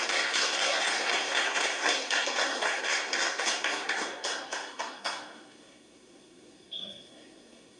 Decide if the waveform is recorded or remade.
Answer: remade